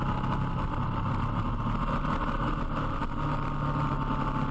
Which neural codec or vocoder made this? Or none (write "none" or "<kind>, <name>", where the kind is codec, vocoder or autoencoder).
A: none